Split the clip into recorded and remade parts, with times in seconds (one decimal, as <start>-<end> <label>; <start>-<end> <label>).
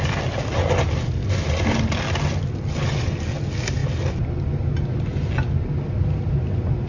0.0-6.9 recorded